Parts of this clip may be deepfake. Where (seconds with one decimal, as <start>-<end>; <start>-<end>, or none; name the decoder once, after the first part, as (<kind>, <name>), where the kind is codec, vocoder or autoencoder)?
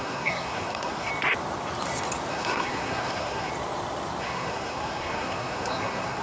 0.0-1.1 (codec, SNAC); 2.3-3.5; 4.2-6.2